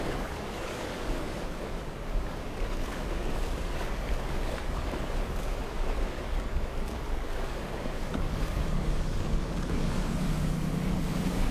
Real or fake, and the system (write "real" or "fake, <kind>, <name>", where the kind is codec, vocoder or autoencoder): fake, codec, DAC